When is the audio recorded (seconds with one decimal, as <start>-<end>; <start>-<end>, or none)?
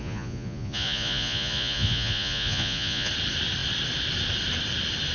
3.1-5.1